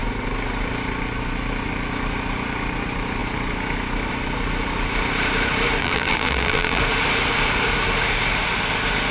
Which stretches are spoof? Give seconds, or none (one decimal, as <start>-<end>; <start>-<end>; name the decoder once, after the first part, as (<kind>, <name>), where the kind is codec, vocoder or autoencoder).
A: 5.8-6.8 (vocoder, BigVGAN v2)

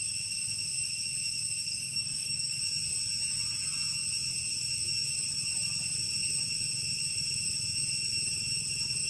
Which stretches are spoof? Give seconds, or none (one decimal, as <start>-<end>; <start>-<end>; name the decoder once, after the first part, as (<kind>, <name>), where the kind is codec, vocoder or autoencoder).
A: 1.7-2.6 (codec, DAC)

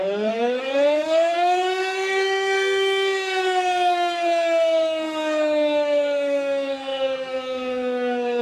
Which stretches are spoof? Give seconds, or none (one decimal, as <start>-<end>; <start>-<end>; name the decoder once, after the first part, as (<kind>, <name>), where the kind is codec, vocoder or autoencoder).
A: 0.0-8.4 (codec, SNAC)

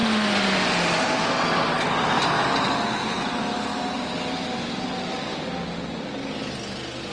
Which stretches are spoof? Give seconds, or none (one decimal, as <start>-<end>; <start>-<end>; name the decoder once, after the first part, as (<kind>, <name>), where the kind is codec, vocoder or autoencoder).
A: none

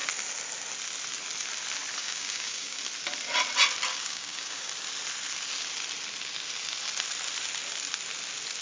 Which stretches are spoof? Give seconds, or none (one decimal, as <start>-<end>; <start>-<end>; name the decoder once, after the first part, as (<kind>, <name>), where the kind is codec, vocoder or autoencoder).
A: 2.0-2.8 (codec, DAC); 3.9-4.7

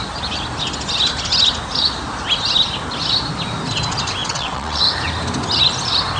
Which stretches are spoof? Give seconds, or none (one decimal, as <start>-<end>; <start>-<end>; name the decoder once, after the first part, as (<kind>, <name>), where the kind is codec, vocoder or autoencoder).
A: 4.2-4.8 (vocoder, WaveNeXt)

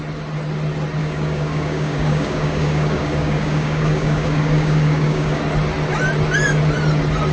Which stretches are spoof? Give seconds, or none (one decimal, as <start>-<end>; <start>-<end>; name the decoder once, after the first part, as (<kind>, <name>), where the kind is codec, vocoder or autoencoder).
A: 1.0-5.4 (codec, DAC)